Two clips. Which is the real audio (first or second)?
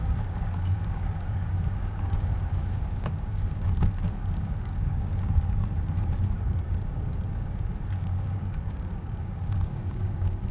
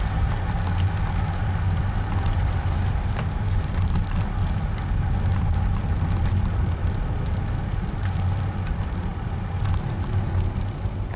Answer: second